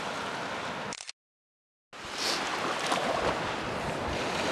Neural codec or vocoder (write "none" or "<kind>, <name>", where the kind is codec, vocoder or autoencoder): none